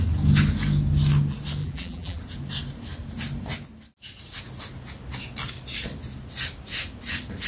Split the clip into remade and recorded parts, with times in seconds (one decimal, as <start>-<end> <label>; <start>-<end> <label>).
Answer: 0.0-1.6 recorded; 1.6-2.2 remade; 2.2-7.5 recorded